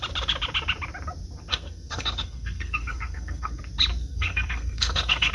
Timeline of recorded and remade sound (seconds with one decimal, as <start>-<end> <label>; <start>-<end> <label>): 0.0-1.5 recorded; 1.5-3.6 remade; 3.6-4.0 recorded; 4.0-5.3 remade